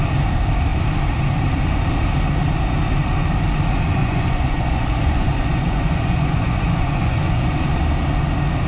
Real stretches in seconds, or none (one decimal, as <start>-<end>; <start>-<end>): 0.0-4.0; 7.6-8.7